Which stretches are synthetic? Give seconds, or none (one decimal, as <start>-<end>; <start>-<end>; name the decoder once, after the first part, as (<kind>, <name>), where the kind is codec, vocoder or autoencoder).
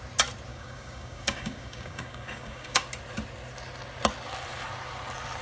0.5-2.8 (codec, DAC)